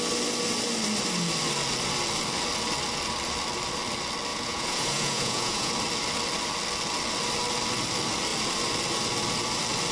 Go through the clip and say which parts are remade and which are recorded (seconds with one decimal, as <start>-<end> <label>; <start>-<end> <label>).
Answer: 0.0-4.3 recorded; 4.3-5.7 remade; 5.7-9.9 recorded

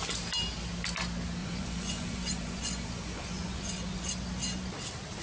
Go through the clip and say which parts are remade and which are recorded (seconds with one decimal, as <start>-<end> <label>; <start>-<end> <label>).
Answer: 0.0-1.4 recorded; 1.4-4.1 remade; 4.1-5.2 recorded